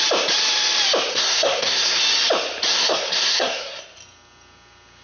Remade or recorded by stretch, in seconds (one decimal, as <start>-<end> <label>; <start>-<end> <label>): 0.0-1.1 recorded; 1.1-2.0 remade; 2.0-2.7 recorded; 2.7-3.8 remade; 3.8-5.0 recorded